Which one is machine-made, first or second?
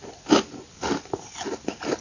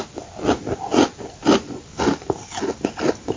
first